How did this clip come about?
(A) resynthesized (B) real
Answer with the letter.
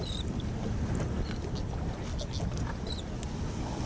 B